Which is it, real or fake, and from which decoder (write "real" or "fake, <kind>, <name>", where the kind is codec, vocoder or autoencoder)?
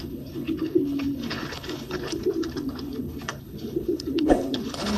fake, codec, HILCodec